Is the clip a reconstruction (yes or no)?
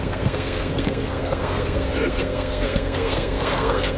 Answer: yes